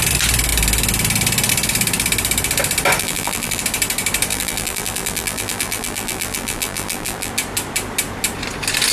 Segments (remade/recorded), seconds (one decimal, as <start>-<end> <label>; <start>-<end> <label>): 0.0-3.0 recorded; 3.0-3.6 remade; 3.6-4.3 recorded; 4.3-7.3 remade; 7.3-8.9 recorded